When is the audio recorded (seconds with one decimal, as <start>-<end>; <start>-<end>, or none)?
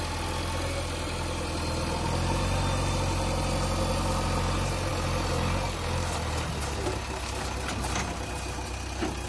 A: 0.0-9.3